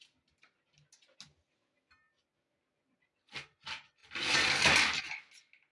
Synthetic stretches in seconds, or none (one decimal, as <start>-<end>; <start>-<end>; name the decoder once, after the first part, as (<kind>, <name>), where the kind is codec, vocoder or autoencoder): none

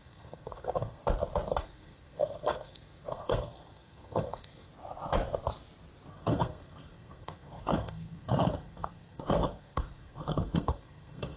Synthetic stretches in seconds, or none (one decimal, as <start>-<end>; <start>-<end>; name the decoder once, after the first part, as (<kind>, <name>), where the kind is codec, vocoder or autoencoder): 0.0-1.0 (codec, SNAC); 1.6-4.7; 6.1-11.4

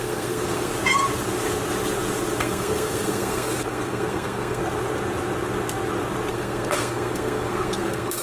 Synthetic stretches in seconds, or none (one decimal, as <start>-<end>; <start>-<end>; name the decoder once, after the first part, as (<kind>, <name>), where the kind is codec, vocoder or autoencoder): 0.0-0.7 (codec, SNAC); 2.4-4.6; 6.3-8.2

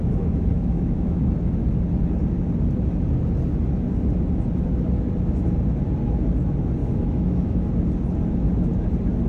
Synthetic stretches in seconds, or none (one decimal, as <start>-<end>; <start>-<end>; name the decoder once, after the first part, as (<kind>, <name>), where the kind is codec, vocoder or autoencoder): 0.0-1.2 (autoencoder, DAC-VAE); 6.8-7.7